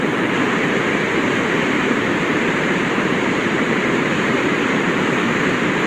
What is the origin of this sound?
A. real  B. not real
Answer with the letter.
B